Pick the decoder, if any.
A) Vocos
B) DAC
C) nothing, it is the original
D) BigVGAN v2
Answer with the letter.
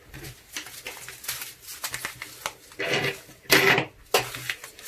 C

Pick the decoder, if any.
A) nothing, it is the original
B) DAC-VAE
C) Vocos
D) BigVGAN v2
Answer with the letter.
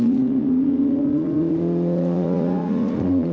C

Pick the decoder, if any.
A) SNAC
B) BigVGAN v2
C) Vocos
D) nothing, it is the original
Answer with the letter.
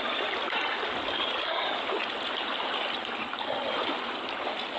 D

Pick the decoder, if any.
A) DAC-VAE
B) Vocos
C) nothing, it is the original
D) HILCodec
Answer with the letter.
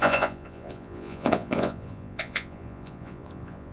B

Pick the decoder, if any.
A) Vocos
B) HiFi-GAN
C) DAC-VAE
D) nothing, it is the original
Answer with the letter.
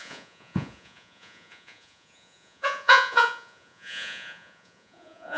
A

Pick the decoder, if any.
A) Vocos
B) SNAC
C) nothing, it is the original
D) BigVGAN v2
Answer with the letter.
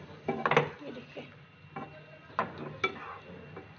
C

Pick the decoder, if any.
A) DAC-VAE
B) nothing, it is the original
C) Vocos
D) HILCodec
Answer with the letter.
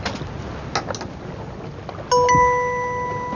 B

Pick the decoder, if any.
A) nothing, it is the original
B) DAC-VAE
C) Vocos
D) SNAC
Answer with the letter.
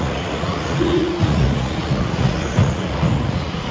C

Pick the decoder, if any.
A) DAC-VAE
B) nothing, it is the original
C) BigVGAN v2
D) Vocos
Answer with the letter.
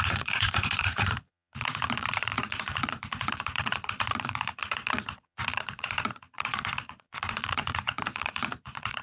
D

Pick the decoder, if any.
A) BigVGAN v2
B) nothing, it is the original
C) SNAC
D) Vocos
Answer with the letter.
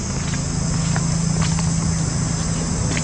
B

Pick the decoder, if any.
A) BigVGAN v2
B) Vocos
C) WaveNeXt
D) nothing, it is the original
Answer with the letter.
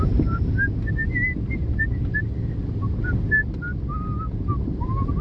D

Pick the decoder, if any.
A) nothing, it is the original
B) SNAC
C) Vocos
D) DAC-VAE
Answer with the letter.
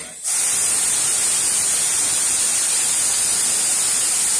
A